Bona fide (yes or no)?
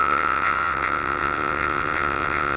no